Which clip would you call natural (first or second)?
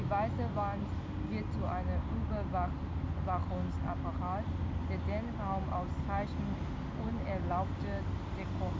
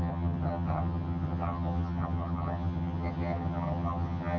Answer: first